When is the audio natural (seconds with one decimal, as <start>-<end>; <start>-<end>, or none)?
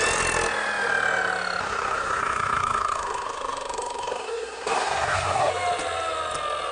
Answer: 0.0-1.6; 5.5-6.7